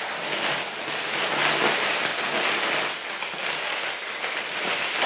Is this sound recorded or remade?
recorded